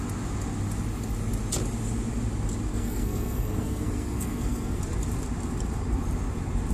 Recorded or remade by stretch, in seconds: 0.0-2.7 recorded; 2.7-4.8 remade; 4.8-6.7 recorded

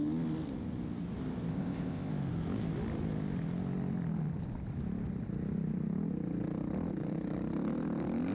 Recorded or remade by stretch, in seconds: 0.0-1.5 recorded; 1.5-2.1 remade; 2.1-8.3 recorded

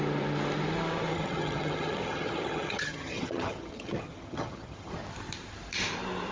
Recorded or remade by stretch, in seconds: 0.0-1.1 recorded; 1.1-4.9 remade; 4.9-6.3 recorded

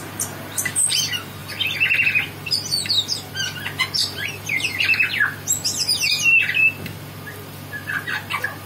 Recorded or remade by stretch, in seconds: 0.0-4.0 recorded; 4.0-4.8 remade; 4.8-8.7 recorded

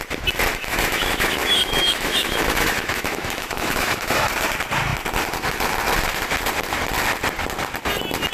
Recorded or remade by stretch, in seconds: 0.0-0.5 recorded; 0.5-4.3 remade; 4.3-8.3 recorded